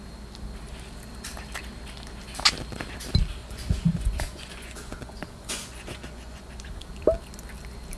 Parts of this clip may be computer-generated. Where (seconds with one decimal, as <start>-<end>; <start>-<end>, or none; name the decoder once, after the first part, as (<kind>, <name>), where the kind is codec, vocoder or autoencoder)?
3.4-6.5 (vocoder, Vocos)